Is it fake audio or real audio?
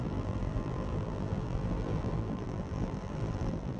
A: fake